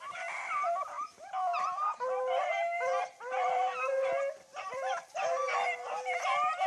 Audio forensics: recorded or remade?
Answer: recorded